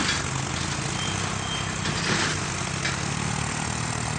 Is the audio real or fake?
real